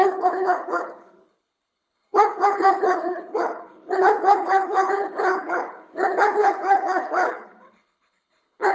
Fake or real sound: fake